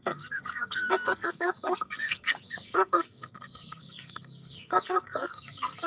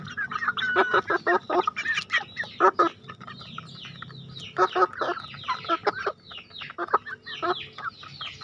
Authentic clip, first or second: second